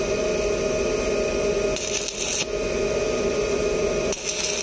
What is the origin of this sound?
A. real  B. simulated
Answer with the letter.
A